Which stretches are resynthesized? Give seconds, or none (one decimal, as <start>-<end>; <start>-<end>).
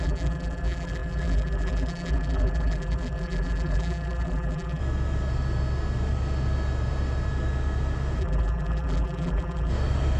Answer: 0.0-4.8; 8.2-9.7